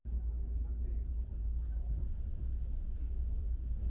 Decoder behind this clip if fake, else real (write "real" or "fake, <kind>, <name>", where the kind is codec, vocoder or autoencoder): real